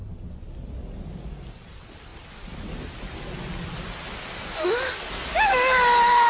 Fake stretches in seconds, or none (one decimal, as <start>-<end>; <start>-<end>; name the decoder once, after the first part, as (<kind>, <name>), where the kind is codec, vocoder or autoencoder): none